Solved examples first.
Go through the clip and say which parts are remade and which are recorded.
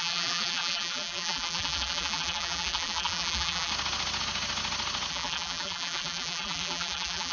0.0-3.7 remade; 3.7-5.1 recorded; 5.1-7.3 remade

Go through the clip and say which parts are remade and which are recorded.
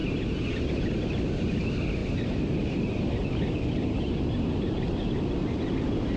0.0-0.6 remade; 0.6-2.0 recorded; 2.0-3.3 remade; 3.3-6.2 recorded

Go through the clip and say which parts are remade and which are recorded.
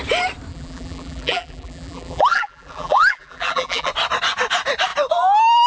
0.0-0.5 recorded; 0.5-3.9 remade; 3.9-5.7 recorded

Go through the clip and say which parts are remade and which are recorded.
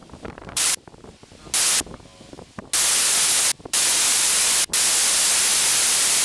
0.0-0.9 remade; 0.9-6.2 recorded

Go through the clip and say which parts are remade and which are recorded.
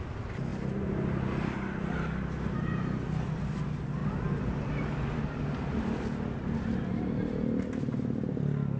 0.0-8.8 recorded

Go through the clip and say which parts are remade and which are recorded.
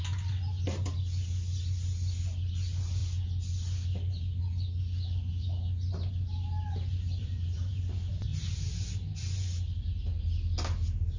0.0-6.9 recorded; 6.9-7.8 remade; 7.8-8.3 recorded; 8.3-9.3 remade; 9.3-11.2 recorded